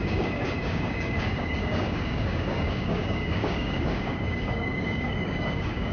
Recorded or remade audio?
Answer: remade